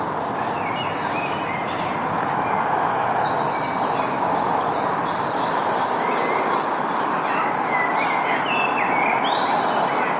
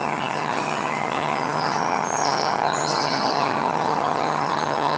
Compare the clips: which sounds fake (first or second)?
second